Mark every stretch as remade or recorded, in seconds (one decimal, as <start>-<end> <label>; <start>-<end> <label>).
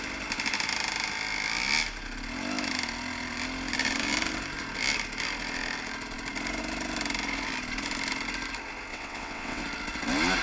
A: 0.0-8.9 recorded; 8.9-9.6 remade; 9.6-10.4 recorded